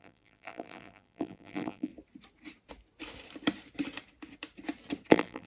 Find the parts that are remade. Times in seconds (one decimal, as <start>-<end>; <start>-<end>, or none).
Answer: 0.0-1.9; 5.1-5.5